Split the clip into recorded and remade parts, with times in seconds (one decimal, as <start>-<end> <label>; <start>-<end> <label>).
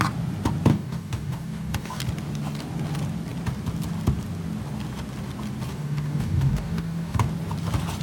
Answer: 0.0-0.7 recorded; 0.7-2.0 remade; 2.0-5.7 recorded; 5.7-7.3 remade; 7.3-8.0 recorded